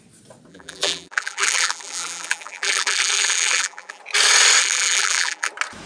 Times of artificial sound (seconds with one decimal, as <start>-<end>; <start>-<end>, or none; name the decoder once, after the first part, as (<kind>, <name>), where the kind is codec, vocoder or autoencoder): 0.5-4.0 (vocoder, BigVGAN v2); 4.6-5.5